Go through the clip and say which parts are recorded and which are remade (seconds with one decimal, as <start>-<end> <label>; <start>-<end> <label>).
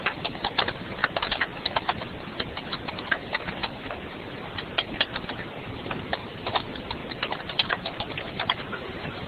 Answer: 0.0-1.0 remade; 1.0-1.6 recorded; 1.6-7.0 remade; 7.0-7.7 recorded; 7.7-9.3 remade